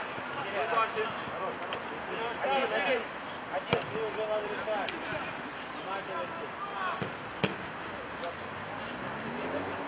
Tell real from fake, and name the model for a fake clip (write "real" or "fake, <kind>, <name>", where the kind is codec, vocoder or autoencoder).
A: real